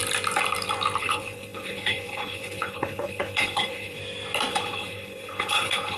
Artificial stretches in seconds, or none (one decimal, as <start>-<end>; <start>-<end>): 1.0-4.0; 4.5-6.0